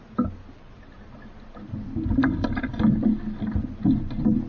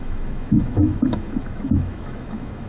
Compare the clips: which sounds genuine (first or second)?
first